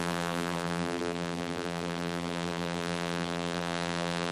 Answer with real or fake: fake